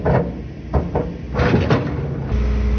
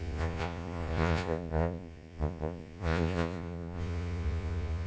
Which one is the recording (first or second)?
first